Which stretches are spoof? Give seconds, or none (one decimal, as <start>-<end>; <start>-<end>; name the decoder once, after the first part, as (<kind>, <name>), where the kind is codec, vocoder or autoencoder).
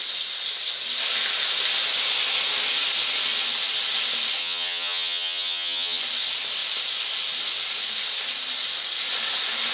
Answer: 4.4-6.0 (vocoder, HiFi-GAN)